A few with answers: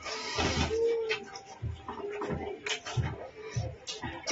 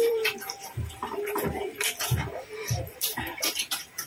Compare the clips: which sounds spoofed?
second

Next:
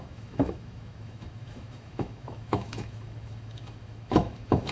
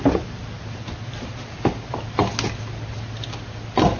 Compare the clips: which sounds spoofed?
first